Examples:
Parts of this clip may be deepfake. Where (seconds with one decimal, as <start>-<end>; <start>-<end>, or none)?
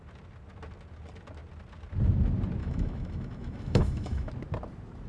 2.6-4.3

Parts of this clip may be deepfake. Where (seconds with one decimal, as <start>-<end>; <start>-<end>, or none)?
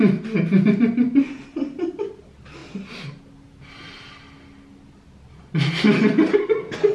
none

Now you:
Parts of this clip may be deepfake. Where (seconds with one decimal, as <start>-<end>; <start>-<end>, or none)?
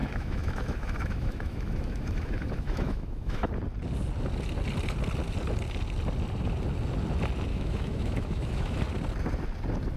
0.0-3.5; 7.5-8.8